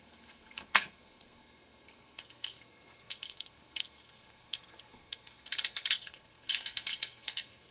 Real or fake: fake